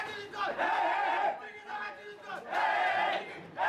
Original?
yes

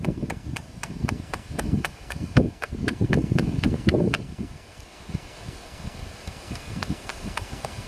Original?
no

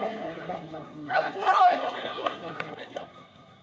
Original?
no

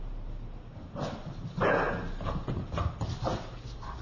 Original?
yes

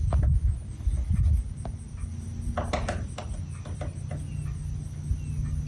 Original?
yes